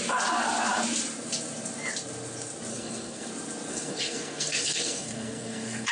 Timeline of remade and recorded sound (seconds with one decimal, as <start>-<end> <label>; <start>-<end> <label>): 0.0-2.7 recorded; 2.7-3.3 remade; 3.3-3.7 recorded; 3.7-5.9 remade

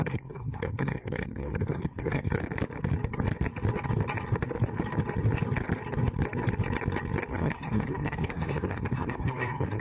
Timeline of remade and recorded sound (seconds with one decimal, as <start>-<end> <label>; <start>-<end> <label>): 0.0-2.4 remade; 2.4-7.3 recorded; 7.3-9.8 remade